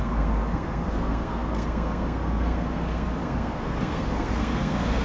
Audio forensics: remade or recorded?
remade